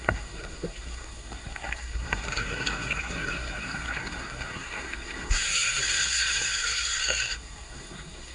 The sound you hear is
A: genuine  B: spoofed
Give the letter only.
B